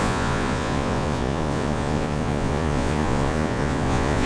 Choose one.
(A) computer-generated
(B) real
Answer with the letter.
A